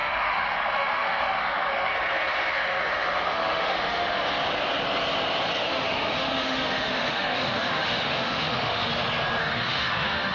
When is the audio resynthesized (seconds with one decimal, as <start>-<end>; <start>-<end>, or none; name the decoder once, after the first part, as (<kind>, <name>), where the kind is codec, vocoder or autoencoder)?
0.0-1.9 (autoencoder, DAC-VAE); 2.5-4.2; 5.6-8.9; 9.4-10.3